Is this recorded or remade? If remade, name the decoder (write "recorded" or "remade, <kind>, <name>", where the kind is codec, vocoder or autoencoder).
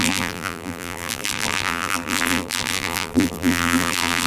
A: remade, vocoder, BigVGAN v2